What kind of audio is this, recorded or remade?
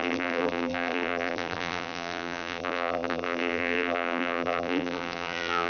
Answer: remade